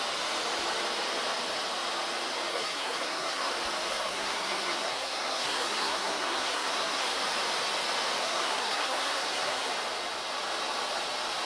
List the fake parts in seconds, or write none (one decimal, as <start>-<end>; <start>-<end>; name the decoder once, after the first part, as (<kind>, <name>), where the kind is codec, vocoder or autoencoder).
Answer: 2.5-3.5 (codec, SNAC); 3.9-7.2; 8.2-9.7